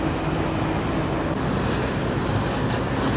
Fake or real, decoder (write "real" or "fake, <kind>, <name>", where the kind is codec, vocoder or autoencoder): real